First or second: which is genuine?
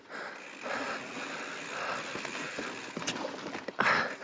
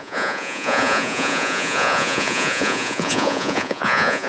first